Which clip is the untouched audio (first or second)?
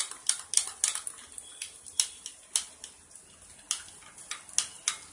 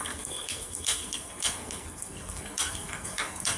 first